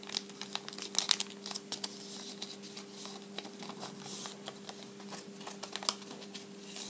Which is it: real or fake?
real